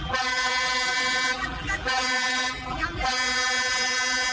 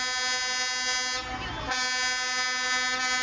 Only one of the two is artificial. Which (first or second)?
first